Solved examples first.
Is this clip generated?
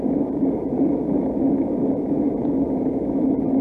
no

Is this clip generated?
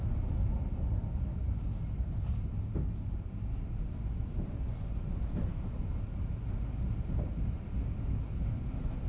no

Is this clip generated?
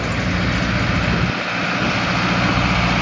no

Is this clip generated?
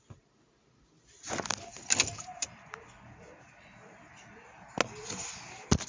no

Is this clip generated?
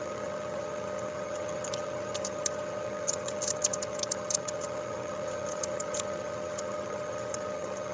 yes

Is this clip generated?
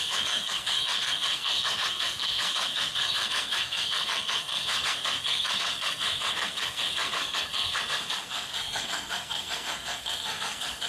yes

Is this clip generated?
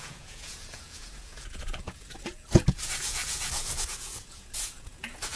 yes